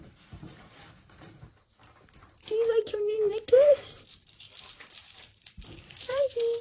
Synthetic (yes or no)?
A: yes